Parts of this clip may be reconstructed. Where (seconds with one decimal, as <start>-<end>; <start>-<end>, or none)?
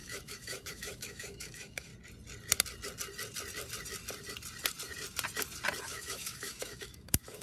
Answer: 0.0-1.9; 5.8-7.4